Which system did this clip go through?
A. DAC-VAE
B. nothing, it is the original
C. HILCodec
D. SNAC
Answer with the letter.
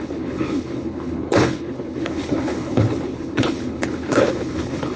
C